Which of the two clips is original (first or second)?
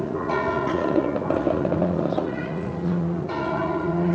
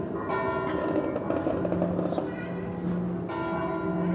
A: second